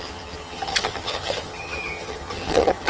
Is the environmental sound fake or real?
fake